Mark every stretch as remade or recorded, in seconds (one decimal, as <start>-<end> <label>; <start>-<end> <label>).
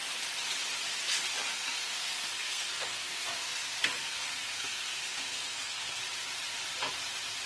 0.0-1.5 recorded; 1.5-6.0 remade; 6.0-7.5 recorded